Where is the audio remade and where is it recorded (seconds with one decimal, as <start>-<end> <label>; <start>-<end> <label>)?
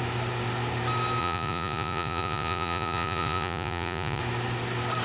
0.0-1.2 recorded; 1.2-4.2 remade; 4.2-5.0 recorded